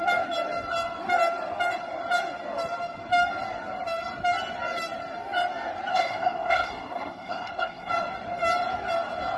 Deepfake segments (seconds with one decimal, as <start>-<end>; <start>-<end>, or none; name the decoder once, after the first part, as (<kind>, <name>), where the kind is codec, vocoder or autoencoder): 5.9-7.9 (codec, SNAC)